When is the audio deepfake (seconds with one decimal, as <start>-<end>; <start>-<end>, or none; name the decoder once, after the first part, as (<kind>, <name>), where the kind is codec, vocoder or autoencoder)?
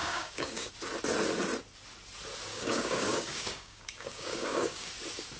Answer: 0.0-0.7 (codec, DAC); 2.5-4.9